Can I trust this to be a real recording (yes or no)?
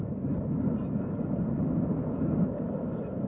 yes